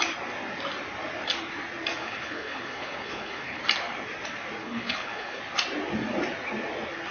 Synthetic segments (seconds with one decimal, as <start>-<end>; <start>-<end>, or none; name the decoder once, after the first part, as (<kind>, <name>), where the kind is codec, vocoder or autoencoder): 2.0-3.6 (codec, HILCodec); 4.6-5.4